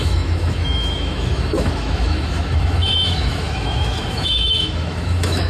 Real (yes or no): no